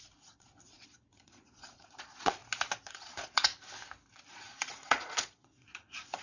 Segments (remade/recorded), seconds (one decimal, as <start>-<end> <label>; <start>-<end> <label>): 0.0-2.4 remade; 2.4-2.9 recorded; 2.9-3.5 remade; 3.5-4.3 recorded; 4.3-6.2 remade